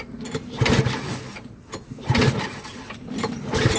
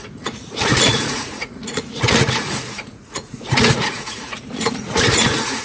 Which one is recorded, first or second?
first